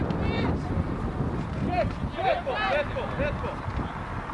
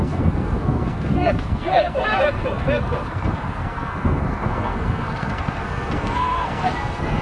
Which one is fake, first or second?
second